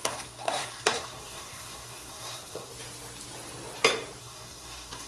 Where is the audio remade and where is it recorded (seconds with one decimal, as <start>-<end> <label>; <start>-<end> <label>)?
0.0-2.7 remade; 2.7-4.2 recorded; 4.2-5.1 remade